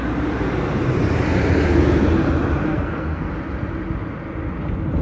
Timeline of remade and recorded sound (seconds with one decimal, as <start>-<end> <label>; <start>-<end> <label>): 0.0-2.7 recorded; 2.7-3.3 remade; 3.3-5.0 recorded